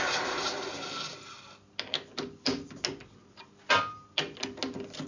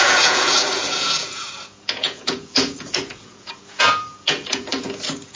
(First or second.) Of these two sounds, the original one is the first